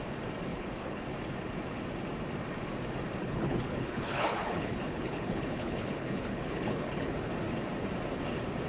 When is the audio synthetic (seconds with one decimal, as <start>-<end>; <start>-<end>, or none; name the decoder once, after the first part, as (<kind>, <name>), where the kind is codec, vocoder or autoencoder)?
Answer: 0.5-1.0 (codec, HILCodec); 3.2-7.3